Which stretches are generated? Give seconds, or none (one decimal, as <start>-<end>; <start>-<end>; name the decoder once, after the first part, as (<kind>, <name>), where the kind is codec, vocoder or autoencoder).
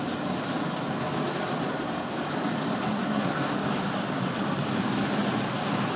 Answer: 2.9-3.6 (codec, SNAC)